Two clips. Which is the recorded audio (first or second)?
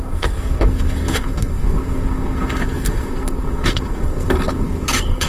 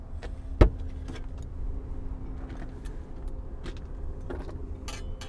second